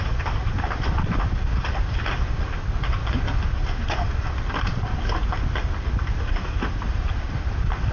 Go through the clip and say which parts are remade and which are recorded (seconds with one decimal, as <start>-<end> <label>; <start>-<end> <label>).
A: 0.0-7.9 recorded